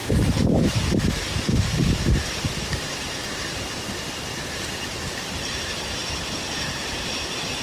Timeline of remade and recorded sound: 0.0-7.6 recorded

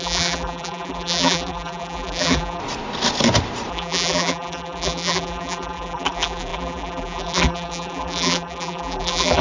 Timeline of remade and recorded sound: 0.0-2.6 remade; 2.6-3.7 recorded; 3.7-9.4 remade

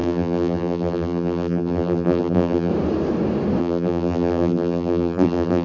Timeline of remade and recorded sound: 0.0-2.7 remade; 2.7-3.6 recorded; 3.6-5.6 remade